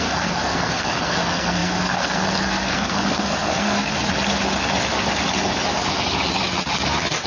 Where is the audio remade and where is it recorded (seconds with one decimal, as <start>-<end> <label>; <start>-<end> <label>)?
0.0-3.9 remade; 3.9-7.3 recorded